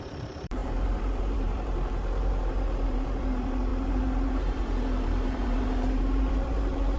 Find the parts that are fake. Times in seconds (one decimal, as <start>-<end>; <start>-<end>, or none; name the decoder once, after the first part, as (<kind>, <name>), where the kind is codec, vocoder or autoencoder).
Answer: 0.0-7.0 (vocoder, BigVGAN v2)

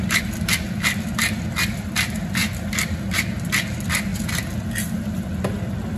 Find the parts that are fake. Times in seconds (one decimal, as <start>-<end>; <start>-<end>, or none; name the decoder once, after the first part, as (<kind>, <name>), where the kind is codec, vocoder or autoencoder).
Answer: none

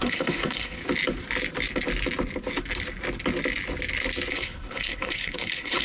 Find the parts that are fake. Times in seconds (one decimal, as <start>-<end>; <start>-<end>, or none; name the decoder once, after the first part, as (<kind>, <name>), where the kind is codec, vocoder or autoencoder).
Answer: 0.0-0.8 (codec, HILCodec); 4.3-5.8

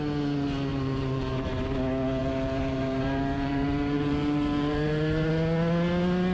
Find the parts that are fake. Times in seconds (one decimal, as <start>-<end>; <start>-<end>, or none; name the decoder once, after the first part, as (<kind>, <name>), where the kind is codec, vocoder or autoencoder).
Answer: 0.7-1.5 (vocoder, BigVGAN v2); 2.2-5.3

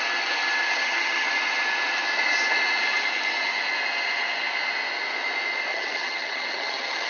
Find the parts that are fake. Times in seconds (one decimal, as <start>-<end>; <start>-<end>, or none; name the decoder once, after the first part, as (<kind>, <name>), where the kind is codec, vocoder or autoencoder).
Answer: 0.6-1.3 (vocoder, HiFi-GAN); 5.7-7.1

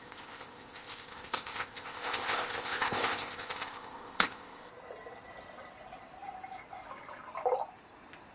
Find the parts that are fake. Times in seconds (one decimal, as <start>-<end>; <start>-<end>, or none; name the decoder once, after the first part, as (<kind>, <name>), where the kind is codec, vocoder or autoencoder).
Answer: 0.0-4.7 (codec, ZipCodec)

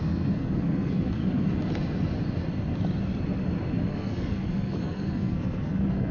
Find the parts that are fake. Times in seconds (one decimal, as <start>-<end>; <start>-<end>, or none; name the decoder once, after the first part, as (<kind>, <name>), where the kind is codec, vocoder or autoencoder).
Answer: 0.0-1.2 (codec, SNAC); 3.9-6.1

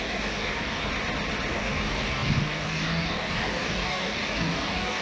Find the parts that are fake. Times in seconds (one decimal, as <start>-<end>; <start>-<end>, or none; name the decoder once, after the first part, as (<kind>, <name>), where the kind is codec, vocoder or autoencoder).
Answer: 0.0-0.9 (codec, DAC); 1.5-5.0